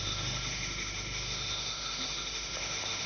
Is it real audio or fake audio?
fake